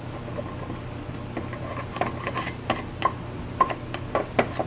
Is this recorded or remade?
recorded